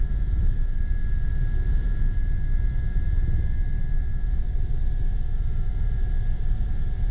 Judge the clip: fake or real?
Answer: fake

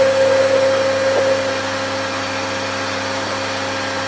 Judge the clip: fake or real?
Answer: real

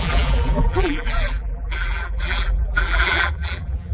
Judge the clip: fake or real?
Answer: fake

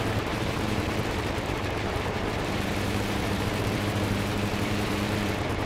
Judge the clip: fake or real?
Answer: fake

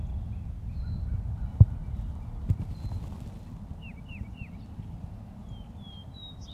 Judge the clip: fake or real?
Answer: real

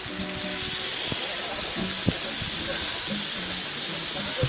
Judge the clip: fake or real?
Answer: real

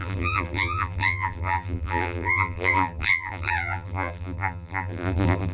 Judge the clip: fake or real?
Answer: fake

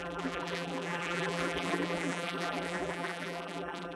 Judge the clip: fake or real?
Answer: fake